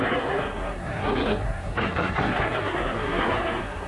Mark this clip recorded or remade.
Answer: remade